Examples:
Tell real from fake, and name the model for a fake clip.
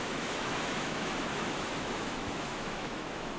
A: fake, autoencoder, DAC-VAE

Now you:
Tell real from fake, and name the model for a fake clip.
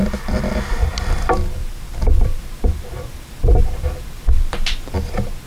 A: fake, vocoder, BigVGAN v2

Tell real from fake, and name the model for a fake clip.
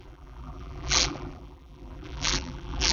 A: fake, vocoder, BigVGAN v2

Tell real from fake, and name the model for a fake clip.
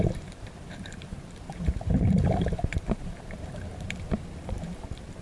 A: fake, vocoder, BigVGAN v2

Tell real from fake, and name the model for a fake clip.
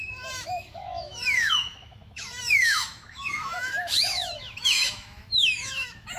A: fake, autoencoder, DAC-VAE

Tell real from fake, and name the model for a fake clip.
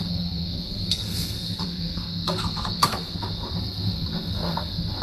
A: fake, codec, SNAC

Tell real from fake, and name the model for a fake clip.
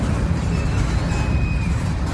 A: real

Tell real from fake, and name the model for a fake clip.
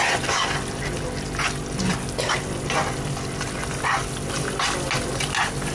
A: real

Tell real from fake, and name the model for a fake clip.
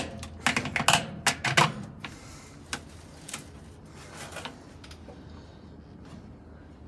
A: real